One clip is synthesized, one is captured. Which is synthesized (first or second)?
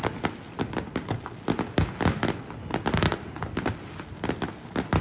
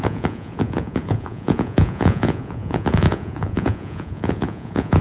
second